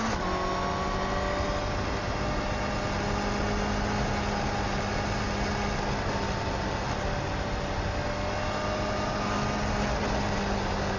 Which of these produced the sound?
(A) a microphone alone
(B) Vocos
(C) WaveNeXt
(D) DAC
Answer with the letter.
A